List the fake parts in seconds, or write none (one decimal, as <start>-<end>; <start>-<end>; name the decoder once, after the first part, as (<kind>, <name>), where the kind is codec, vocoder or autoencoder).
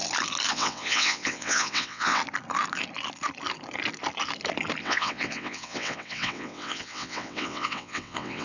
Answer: 0.5-2.2 (vocoder, WaveNeXt); 4.8-8.4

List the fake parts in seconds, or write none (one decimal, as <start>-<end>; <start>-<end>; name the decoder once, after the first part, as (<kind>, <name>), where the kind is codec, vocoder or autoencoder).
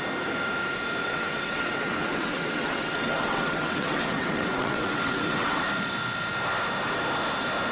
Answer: 1.0-5.6 (vocoder, WaveNeXt)